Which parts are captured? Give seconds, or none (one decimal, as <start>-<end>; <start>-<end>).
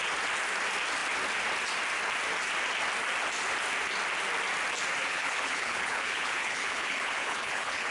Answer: 0.0-5.1